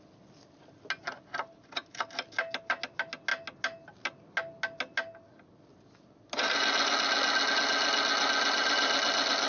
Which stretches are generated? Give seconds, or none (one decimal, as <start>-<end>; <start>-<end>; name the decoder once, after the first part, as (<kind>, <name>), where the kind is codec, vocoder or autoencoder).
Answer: none